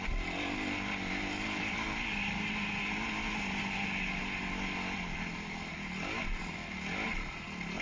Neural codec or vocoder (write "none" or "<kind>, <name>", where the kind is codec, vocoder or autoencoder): none